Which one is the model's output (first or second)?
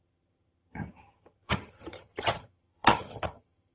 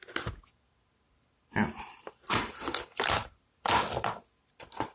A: first